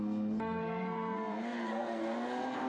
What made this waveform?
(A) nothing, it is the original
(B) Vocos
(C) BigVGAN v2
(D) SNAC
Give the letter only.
D